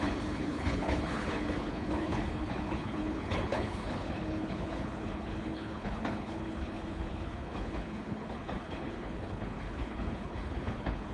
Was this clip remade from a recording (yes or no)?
yes